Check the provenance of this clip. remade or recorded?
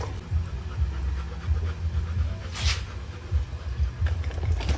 recorded